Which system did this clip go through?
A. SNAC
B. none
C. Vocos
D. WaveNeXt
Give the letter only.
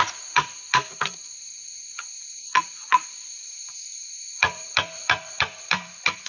C